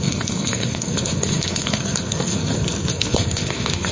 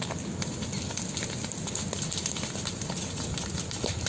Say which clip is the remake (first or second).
first